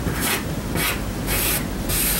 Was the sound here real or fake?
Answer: fake